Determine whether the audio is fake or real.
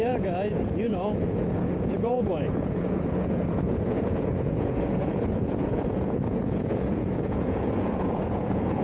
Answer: fake